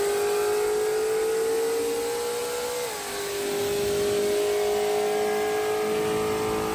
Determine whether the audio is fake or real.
real